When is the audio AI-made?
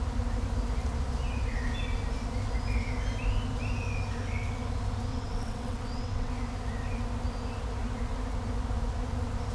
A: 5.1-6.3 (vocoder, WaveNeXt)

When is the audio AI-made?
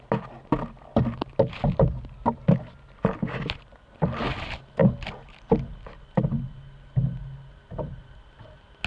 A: none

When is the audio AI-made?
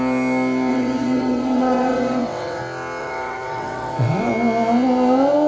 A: 0.7-2.6 (vocoder, WaveNeXt); 3.0-4.3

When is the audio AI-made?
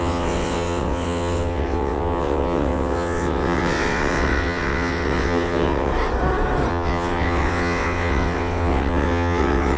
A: 0.0-5.9 (vocoder, WaveNeXt); 6.7-9.8